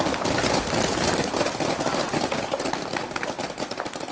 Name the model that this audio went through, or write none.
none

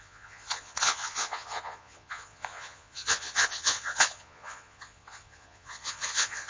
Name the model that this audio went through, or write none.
vocoder, Vocos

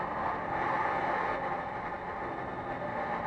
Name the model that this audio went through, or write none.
none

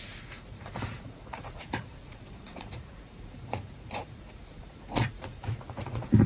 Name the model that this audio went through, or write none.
vocoder, Vocos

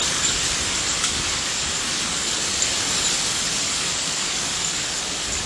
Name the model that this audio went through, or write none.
codec, DAC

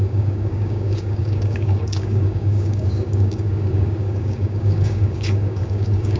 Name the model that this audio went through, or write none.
codec, DAC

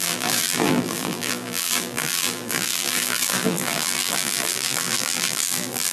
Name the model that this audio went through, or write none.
vocoder, BigVGAN v2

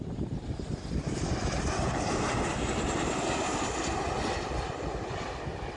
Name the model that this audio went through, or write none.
none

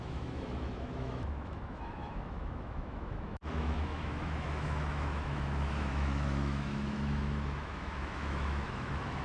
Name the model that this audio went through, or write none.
autoencoder, DAC-VAE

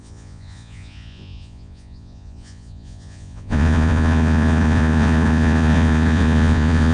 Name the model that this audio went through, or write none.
vocoder, Vocos